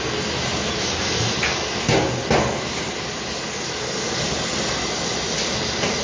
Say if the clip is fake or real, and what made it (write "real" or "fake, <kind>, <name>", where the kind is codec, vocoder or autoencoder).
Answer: real